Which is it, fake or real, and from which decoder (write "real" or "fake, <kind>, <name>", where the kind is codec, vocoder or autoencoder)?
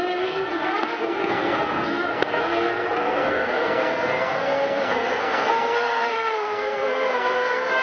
fake, codec, SNAC